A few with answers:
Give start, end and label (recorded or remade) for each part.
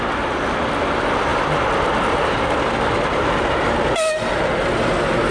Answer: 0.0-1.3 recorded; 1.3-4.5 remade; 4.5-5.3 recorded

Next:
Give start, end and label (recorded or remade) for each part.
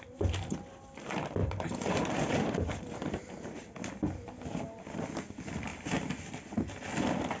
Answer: 0.0-1.4 recorded; 1.4-3.6 remade; 3.6-7.4 recorded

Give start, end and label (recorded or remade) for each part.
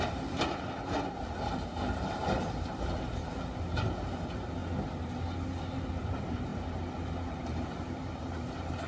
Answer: 0.0-4.6 remade; 4.6-6.1 recorded; 6.1-6.5 remade; 6.5-7.4 recorded; 7.4-8.9 remade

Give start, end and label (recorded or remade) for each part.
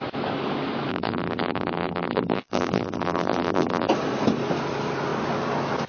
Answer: 0.0-0.9 recorded; 0.9-3.9 remade; 3.9-5.9 recorded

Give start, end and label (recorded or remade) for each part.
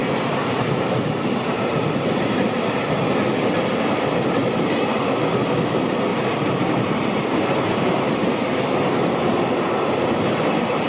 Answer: 0.0-2.2 remade; 2.2-4.4 recorded; 4.4-5.0 remade; 5.0-6.1 recorded; 6.1-10.9 remade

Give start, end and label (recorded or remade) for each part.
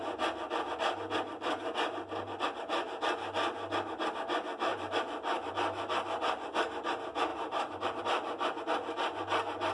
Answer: 0.0-4.7 recorded; 4.7-5.5 remade; 5.5-7.3 recorded; 7.3-8.0 remade; 8.0-9.7 recorded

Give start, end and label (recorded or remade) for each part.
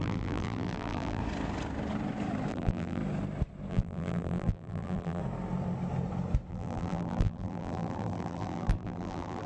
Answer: 0.0-1.2 remade; 1.2-2.5 recorded; 2.5-3.0 remade; 3.0-3.7 recorded; 3.7-5.2 remade; 5.2-6.5 recorded; 6.5-9.5 remade